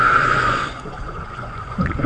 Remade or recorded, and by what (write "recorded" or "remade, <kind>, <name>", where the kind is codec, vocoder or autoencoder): remade, vocoder, Vocos